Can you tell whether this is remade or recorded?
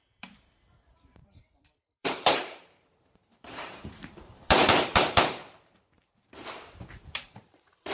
remade